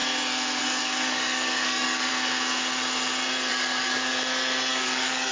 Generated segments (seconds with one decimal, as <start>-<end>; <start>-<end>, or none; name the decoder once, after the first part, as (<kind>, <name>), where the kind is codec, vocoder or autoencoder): 0.6-2.1 (codec, DAC); 3.5-4.1; 4.7-5.3